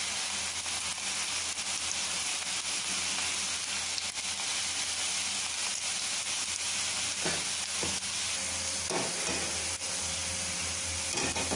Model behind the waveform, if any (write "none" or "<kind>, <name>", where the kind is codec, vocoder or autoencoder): none